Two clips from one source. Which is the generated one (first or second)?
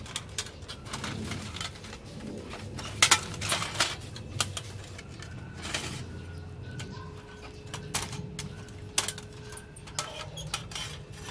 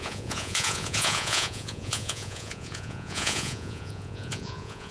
second